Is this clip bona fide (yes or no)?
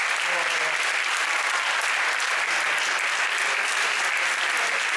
yes